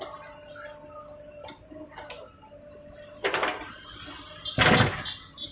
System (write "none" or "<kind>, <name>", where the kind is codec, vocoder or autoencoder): none